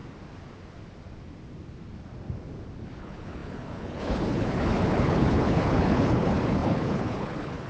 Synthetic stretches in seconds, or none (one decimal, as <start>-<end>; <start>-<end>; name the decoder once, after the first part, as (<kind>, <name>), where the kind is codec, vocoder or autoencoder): 3.0-7.7 (codec, HILCodec)